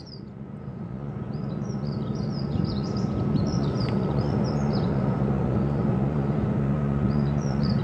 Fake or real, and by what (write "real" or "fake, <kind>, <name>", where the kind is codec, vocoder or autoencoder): fake, vocoder, Vocos